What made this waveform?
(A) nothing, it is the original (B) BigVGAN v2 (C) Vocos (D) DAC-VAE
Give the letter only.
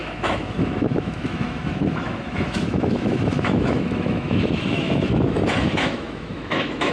D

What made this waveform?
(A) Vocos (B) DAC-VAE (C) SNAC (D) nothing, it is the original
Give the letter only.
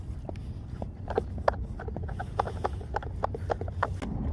D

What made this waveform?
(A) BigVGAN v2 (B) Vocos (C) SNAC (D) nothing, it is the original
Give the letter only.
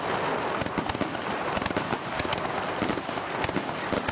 D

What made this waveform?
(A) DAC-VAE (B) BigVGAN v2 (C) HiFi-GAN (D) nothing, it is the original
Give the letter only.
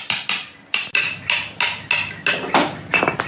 D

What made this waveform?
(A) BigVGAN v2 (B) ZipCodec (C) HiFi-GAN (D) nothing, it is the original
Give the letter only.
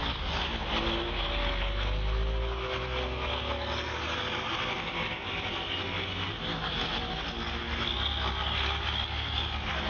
D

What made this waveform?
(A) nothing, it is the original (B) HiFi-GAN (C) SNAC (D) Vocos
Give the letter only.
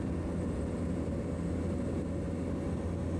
A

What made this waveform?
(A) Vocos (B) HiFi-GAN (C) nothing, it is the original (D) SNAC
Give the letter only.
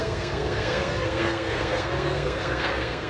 D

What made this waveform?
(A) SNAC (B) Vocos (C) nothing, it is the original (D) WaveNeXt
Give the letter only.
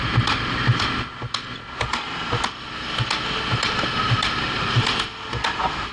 C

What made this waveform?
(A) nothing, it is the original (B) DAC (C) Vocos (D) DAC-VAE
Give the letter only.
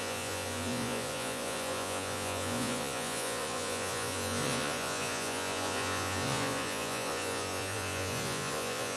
C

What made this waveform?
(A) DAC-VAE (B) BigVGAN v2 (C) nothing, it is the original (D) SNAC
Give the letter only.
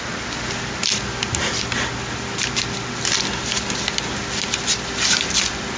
C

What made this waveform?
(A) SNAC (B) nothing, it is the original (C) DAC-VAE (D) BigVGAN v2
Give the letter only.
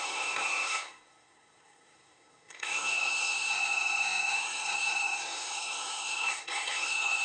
A